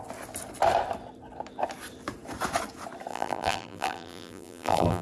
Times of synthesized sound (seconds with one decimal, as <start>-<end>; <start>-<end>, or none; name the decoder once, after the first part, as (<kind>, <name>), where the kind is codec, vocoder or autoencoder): 3.1-5.0 (vocoder, BigVGAN v2)